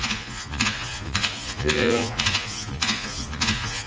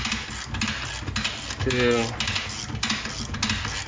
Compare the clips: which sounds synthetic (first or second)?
first